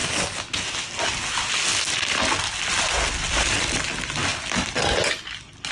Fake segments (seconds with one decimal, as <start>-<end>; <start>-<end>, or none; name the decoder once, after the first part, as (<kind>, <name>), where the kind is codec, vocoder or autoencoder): none